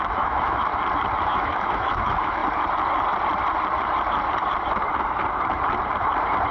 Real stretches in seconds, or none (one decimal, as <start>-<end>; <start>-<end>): 0.7-1.2; 2.4-6.5